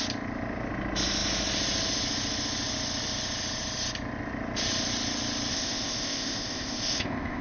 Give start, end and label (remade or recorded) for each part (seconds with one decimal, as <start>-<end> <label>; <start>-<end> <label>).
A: 0.0-5.5 recorded; 5.5-7.4 remade